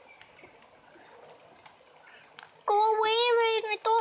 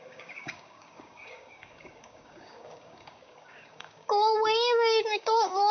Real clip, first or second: first